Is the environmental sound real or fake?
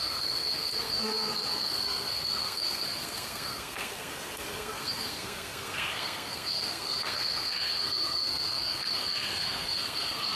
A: fake